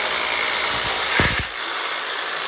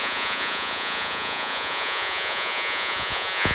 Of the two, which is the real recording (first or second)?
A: first